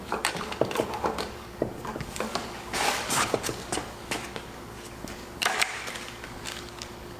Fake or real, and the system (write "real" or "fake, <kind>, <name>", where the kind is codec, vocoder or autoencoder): fake, codec, DAC